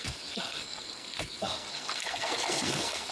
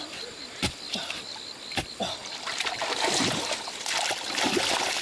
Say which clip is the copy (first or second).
first